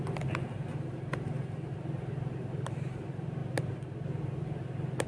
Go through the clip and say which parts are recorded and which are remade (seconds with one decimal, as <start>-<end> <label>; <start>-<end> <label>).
0.0-5.1 recorded